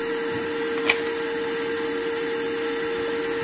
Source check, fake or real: real